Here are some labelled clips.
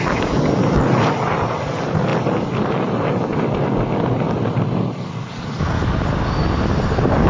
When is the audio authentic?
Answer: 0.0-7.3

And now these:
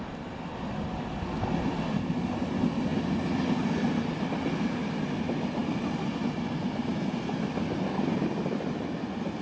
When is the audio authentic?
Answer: 0.0-9.4

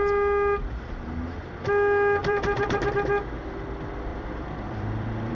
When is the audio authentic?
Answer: 0.0-2.2; 2.9-4.1

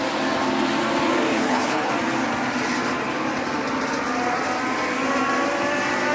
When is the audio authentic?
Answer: 0.0-1.3; 1.9-6.1

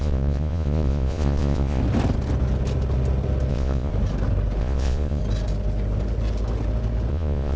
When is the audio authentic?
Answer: 1.8-3.5; 3.9-4.6; 5.2-7.1

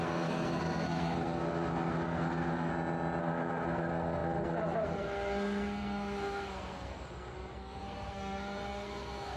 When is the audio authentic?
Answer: 2.7-3.2

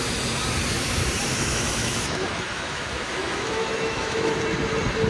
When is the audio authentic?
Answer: 0.0-1.3; 4.4-5.1

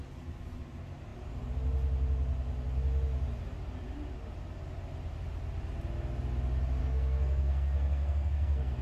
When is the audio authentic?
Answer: 0.0-6.8